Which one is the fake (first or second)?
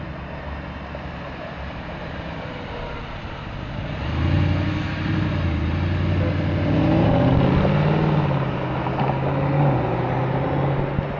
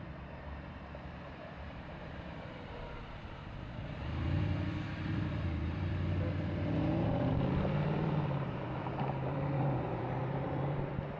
second